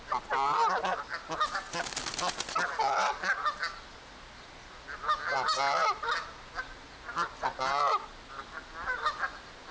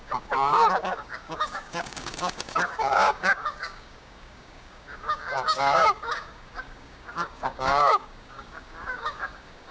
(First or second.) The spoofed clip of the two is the second